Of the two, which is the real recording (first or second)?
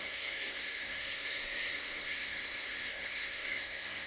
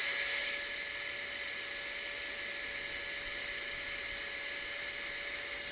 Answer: second